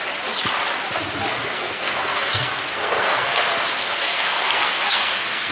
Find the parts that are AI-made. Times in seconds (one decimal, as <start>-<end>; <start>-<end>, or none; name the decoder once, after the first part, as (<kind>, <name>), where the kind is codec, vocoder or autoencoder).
1.4-3.4 (codec, SNAC); 3.8-5.5